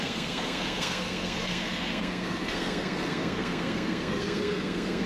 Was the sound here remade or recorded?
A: remade